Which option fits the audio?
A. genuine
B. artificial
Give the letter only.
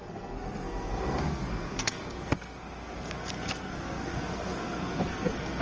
B